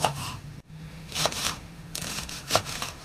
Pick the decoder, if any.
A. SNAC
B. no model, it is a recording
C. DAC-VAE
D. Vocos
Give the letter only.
C